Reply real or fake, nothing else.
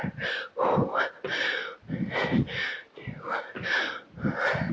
real